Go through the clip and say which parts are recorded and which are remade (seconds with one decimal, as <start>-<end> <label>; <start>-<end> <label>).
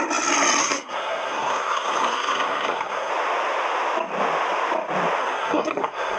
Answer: 0.0-0.6 recorded; 0.6-3.1 remade; 3.1-5.2 recorded; 5.2-6.2 remade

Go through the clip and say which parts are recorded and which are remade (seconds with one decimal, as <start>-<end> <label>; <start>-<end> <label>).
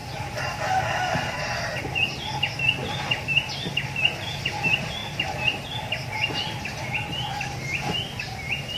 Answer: 0.0-8.8 recorded